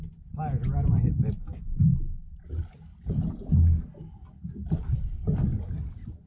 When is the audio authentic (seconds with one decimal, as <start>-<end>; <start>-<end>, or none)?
0.0-6.3